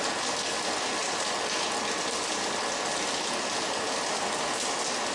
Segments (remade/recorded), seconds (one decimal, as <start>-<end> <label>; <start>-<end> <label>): 0.0-5.1 recorded